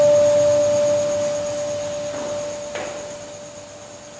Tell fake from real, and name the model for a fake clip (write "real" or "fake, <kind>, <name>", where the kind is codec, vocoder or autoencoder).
real